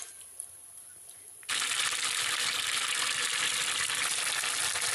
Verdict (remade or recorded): recorded